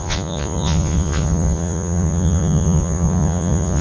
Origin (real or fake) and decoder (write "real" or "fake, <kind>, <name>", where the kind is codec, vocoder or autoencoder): fake, vocoder, Vocos